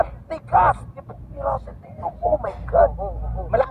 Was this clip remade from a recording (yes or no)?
no